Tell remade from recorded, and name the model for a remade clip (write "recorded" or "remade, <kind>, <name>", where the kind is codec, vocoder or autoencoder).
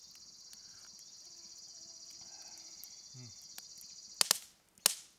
recorded